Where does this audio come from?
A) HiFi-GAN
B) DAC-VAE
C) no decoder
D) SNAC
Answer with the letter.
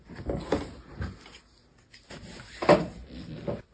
C